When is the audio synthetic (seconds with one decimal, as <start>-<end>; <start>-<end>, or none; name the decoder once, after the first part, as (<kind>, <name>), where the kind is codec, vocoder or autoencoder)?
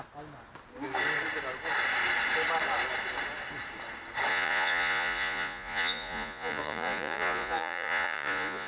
4.3-8.7 (vocoder, Vocos)